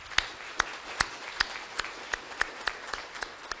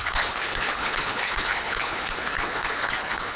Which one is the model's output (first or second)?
second